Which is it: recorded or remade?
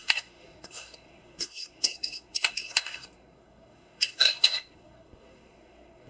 remade